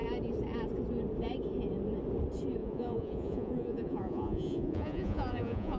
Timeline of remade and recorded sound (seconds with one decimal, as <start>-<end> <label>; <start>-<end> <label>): 0.0-2.6 recorded; 2.6-5.8 remade